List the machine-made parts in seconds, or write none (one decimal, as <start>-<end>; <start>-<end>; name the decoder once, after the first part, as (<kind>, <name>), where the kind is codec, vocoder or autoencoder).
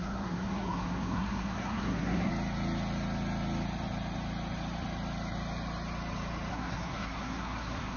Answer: 0.0-2.3 (codec, SNAC); 6.5-8.0